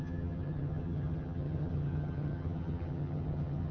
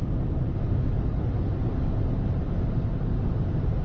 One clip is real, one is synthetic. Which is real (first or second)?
second